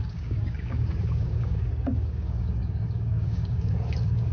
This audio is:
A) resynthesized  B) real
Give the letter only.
A